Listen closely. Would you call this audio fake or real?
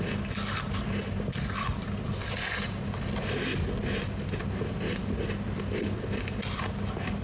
real